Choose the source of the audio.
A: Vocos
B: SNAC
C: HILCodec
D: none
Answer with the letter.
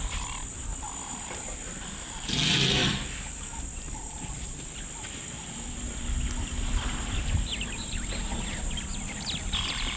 D